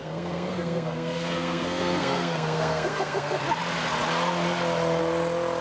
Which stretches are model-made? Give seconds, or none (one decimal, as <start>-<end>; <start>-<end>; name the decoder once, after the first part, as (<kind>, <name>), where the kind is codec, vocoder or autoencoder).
0.0-3.4 (codec, SNAC)